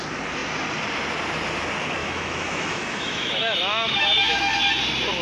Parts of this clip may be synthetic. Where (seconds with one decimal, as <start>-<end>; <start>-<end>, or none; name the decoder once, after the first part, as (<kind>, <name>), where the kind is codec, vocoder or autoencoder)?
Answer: 2.0-4.6 (autoencoder, DAC-VAE)